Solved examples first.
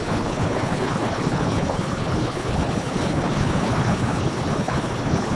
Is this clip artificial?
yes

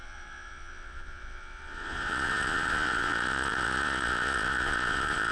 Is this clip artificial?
yes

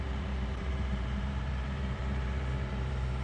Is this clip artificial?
yes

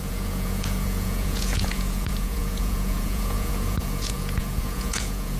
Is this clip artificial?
yes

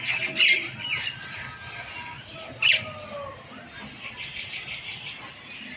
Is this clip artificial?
no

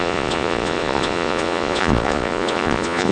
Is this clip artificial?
yes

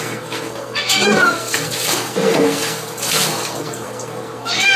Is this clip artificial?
yes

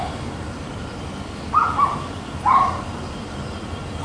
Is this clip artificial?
no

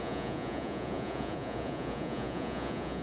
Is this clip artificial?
yes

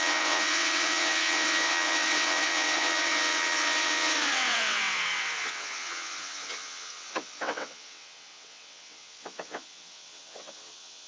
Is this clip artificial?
yes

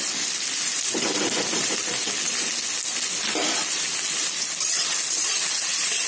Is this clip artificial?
no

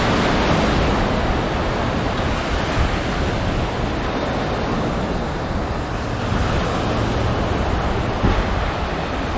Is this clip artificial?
no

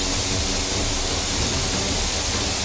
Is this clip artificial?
no